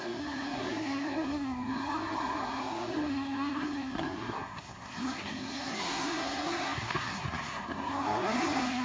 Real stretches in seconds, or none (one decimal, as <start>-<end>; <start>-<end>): none